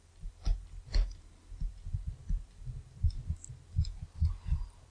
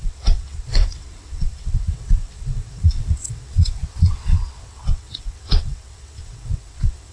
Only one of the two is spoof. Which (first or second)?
second